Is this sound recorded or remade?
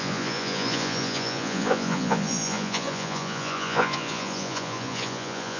remade